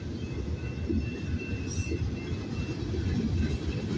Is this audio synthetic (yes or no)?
no